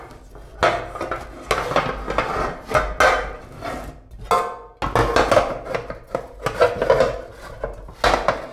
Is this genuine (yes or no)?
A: yes